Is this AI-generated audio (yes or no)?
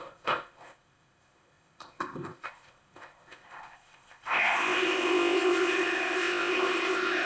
yes